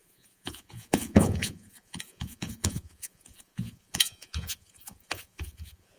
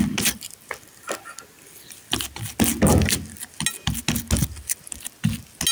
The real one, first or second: second